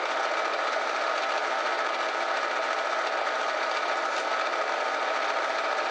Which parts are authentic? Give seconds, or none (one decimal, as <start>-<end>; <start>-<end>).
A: 0.0-5.9